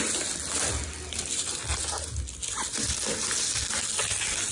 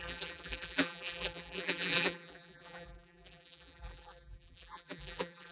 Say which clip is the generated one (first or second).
second